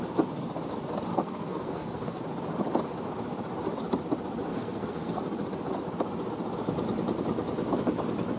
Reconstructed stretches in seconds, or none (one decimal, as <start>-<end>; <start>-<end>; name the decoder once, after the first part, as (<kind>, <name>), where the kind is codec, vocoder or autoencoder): 1.1-2.2 (codec, SNAC); 4.5-5.2